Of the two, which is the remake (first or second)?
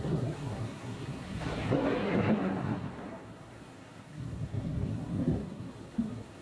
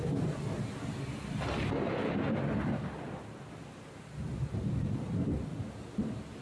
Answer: first